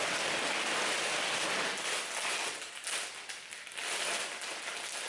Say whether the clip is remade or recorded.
recorded